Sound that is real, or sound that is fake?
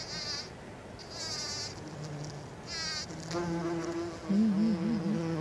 real